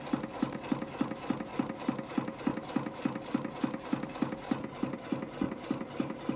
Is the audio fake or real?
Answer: real